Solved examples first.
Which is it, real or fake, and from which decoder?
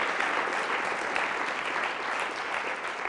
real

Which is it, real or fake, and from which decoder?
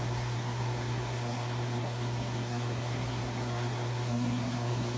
fake, codec, SNAC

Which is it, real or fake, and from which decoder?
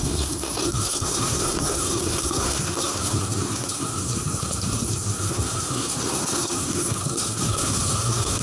fake, codec, SNAC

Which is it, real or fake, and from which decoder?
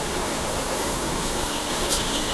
fake, codec, SNAC